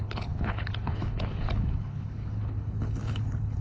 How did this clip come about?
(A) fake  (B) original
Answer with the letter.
A